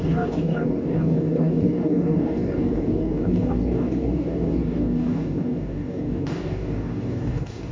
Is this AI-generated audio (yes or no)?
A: yes